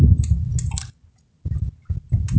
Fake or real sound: real